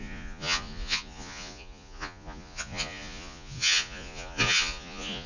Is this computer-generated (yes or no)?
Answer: yes